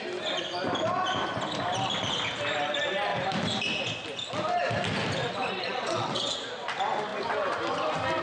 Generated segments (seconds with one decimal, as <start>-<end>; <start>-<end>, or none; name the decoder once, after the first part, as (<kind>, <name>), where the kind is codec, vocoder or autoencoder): 5.2-6.4 (vocoder, WaveNeXt)